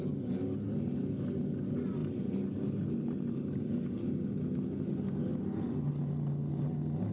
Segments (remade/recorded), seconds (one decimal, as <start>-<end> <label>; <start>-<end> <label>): 0.0-7.1 recorded

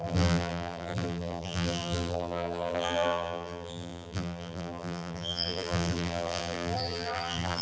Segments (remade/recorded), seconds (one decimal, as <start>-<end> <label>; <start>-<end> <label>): 0.0-7.6 remade

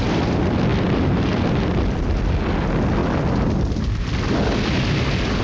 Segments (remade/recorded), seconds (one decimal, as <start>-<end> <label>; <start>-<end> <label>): 0.0-0.7 recorded; 0.7-2.2 remade; 2.2-5.4 recorded

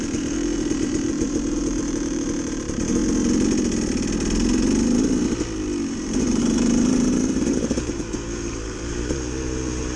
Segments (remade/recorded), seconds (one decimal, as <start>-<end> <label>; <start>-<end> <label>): 0.0-3.0 remade; 3.0-5.8 recorded; 5.8-10.0 remade

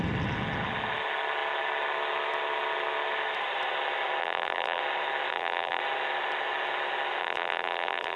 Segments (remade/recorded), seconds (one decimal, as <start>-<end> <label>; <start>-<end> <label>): 0.0-4.2 recorded; 4.2-4.8 remade; 4.8-5.3 recorded; 5.3-5.8 remade; 5.8-7.2 recorded; 7.2-8.2 remade

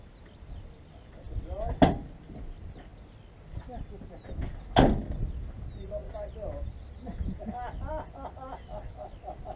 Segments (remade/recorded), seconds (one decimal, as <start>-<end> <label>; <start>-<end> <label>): 0.0-9.6 recorded

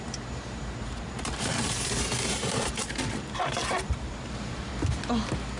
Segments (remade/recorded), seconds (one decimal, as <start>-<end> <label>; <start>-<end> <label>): 0.0-4.7 remade; 4.7-5.6 recorded

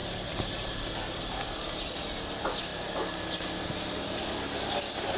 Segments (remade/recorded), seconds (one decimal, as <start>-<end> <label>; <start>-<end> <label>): 0.0-2.2 remade; 2.2-5.2 recorded